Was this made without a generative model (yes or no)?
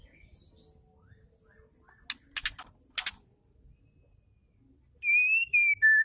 yes